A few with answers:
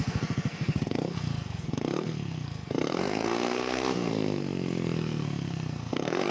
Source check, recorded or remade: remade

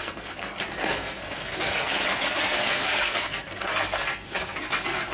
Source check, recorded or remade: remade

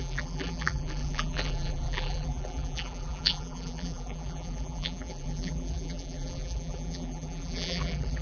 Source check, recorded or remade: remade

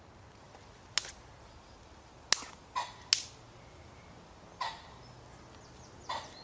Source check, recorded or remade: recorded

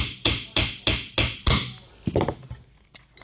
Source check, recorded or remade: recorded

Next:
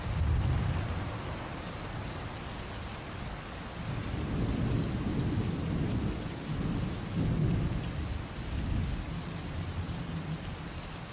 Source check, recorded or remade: recorded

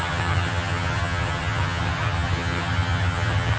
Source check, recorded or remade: remade